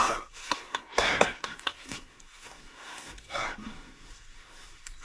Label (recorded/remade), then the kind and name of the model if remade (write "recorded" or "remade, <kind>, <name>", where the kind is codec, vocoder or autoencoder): remade, codec, SNAC